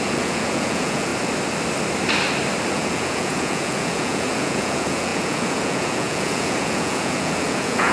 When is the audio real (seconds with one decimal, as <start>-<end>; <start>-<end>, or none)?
1.1-2.7